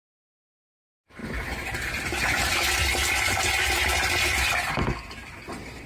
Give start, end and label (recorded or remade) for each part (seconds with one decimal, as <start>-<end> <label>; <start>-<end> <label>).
0.0-5.9 recorded